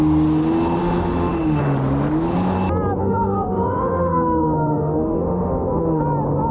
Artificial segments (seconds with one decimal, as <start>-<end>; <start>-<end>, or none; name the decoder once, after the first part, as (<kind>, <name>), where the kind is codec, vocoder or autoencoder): 0.8-1.6 (autoencoder, DAC-VAE); 3.0-6.0